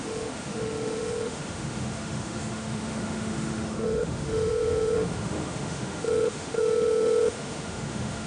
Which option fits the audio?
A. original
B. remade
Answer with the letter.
B